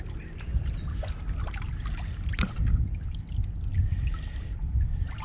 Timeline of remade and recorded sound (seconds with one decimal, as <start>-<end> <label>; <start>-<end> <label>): 0.0-5.2 recorded